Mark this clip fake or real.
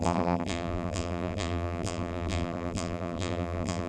fake